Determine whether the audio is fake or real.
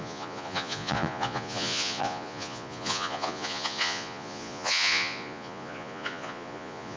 fake